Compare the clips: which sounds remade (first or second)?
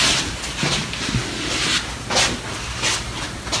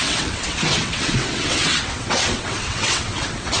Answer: second